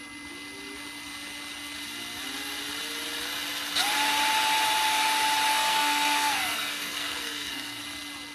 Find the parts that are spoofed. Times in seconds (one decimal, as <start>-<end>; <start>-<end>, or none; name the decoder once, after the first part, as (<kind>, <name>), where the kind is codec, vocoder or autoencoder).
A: 5.5-7.8 (codec, SNAC)